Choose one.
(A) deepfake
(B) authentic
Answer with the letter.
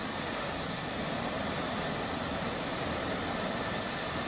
A